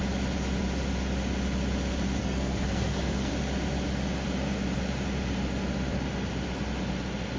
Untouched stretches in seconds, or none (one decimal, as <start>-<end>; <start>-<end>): 0.0-2.2; 3.3-7.4

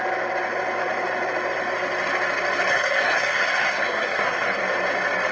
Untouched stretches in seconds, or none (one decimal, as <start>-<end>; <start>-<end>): 0.0-2.7; 4.6-5.3

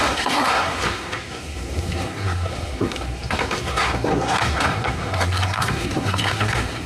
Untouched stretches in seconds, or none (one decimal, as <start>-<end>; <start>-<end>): none

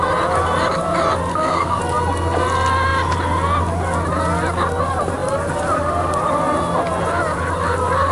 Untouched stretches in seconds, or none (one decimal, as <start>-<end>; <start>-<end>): 0.0-1.3; 1.8-8.1

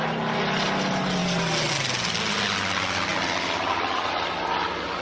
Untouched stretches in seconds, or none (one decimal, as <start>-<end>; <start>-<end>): 0.0-5.0